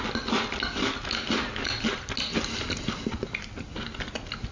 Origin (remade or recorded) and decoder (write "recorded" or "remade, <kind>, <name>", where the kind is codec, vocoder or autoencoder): recorded